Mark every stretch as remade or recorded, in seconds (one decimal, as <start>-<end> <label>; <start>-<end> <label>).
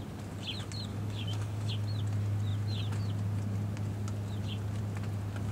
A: 0.0-0.9 recorded; 0.9-1.7 remade; 1.7-5.5 recorded